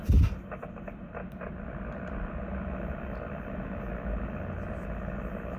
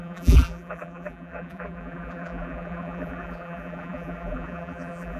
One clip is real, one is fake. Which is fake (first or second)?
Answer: second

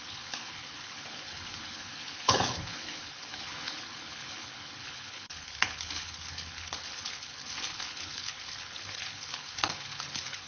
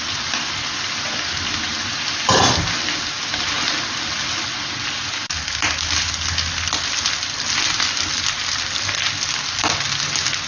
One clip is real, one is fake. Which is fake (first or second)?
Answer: first